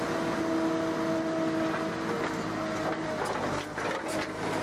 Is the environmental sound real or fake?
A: real